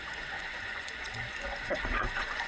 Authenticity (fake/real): fake